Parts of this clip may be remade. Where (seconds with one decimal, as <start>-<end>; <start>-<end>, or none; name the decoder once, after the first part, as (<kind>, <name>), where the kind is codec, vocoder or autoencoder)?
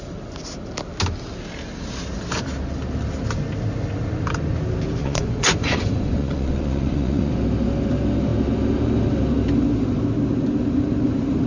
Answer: 5.0-7.3 (vocoder, Vocos)